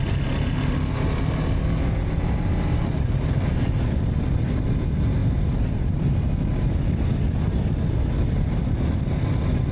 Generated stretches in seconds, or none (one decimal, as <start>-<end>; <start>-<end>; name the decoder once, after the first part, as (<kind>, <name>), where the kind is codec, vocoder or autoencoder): none